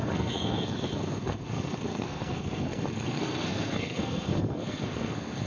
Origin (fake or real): fake